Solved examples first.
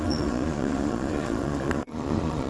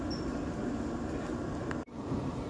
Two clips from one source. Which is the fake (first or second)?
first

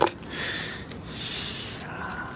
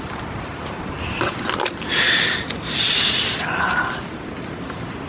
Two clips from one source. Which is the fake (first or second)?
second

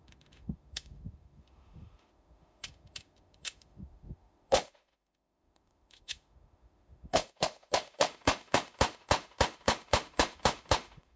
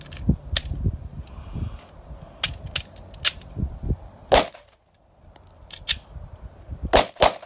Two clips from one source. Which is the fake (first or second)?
first